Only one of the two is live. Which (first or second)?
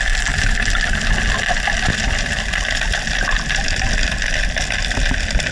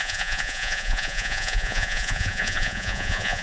first